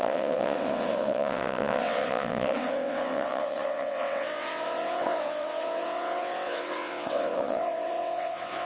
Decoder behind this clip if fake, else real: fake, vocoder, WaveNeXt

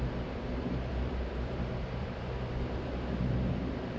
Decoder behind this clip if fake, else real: fake, vocoder, BigVGAN v2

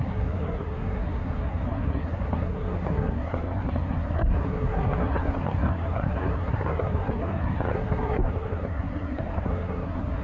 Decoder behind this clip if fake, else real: fake, codec, SNAC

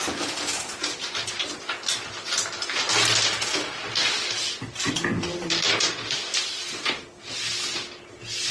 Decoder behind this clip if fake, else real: real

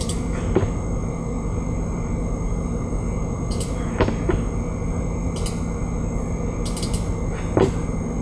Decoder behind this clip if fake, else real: real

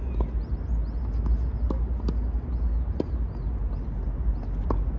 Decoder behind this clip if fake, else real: real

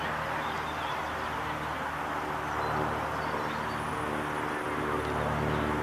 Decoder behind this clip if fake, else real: real